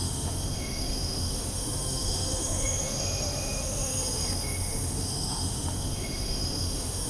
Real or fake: fake